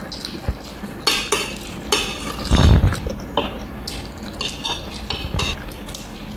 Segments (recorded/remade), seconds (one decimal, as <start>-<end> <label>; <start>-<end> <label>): 0.0-6.4 recorded